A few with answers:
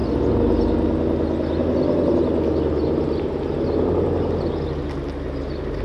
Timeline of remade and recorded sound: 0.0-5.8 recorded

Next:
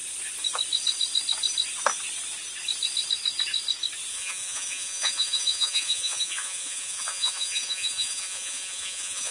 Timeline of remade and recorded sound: 0.0-4.1 recorded; 4.1-9.3 remade